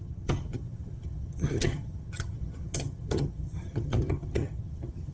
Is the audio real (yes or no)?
no